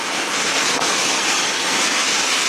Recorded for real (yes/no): no